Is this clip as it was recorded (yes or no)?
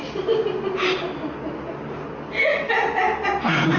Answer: yes